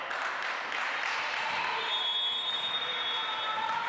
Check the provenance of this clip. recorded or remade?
recorded